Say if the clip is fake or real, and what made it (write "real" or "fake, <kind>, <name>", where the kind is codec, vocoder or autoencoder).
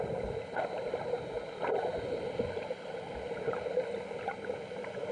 real